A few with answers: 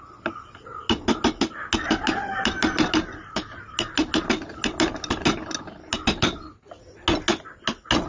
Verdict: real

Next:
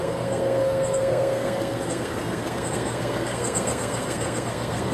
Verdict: fake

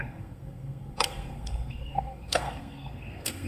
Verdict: fake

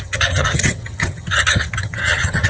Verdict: fake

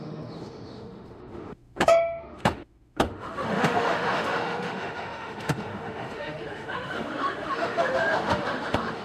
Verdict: fake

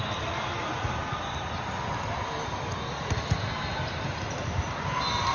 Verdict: real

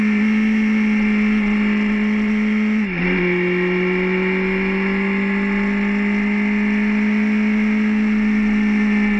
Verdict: real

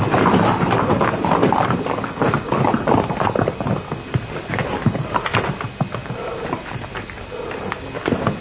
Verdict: real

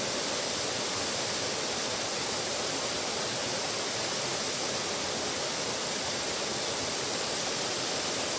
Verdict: real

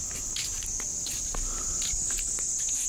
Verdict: real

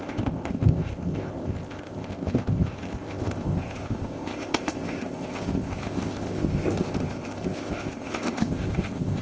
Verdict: fake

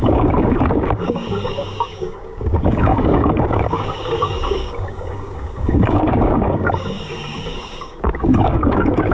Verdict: fake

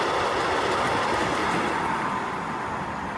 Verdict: real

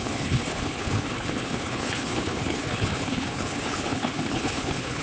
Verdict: fake